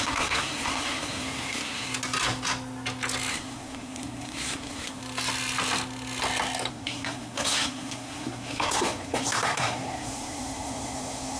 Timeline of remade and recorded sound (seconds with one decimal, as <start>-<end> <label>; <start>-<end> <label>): 0.0-1.9 remade; 1.9-3.3 recorded; 3.3-5.0 remade; 5.0-6.7 recorded; 6.7-11.4 remade